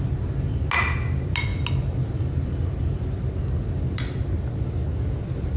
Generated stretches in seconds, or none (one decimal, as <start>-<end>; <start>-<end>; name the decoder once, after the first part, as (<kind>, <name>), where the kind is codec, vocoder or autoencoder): none